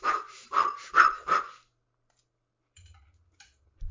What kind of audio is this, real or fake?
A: real